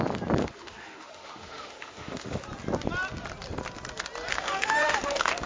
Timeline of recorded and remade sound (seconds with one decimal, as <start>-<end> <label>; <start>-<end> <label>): 0.0-0.4 recorded; 0.4-2.4 remade; 2.4-4.3 recorded; 4.3-5.5 remade